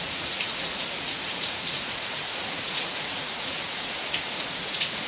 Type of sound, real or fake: fake